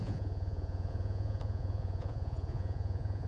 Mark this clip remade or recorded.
remade